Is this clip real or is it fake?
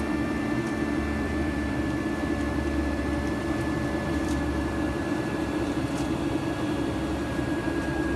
fake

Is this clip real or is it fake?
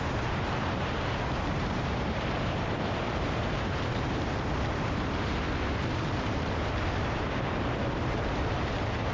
fake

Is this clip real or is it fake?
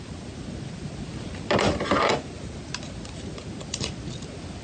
real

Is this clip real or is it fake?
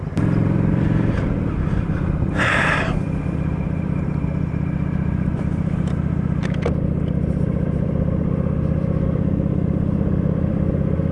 fake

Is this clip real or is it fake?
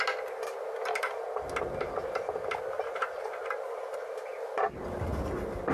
real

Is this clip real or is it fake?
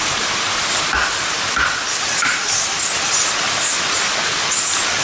real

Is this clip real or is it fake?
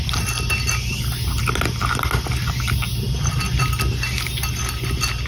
real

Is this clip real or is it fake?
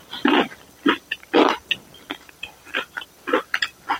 real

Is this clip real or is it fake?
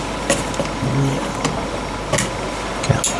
real